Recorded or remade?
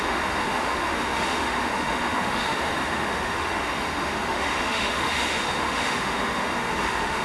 remade